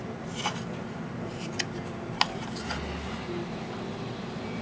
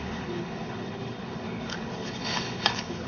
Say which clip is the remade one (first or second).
second